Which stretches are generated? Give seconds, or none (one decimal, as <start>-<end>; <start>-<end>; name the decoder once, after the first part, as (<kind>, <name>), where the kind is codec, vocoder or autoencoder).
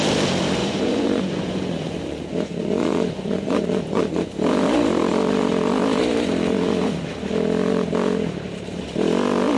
0.6-4.3 (vocoder, Vocos); 6.5-7.1